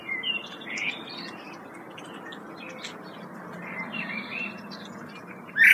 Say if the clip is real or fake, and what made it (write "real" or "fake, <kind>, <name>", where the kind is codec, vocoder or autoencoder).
real